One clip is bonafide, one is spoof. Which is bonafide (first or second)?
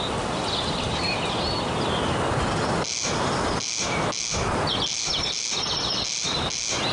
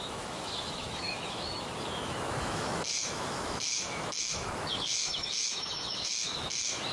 first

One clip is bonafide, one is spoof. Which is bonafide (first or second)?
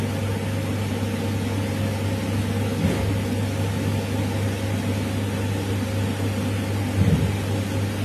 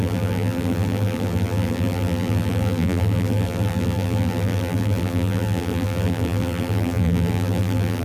first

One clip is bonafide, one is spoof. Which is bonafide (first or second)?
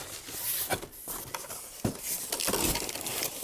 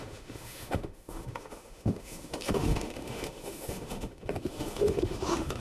first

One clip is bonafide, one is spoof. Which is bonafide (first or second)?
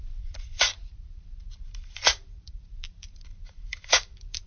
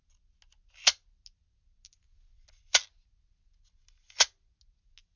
second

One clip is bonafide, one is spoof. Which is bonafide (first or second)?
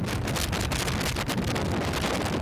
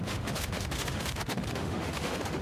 first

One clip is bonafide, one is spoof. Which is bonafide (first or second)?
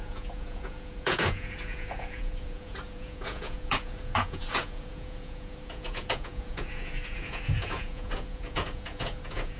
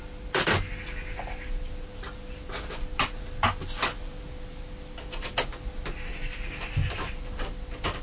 second